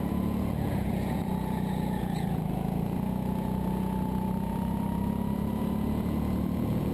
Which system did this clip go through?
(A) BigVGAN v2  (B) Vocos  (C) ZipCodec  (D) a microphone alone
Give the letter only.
B